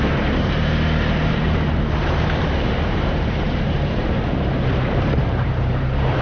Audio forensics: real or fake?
fake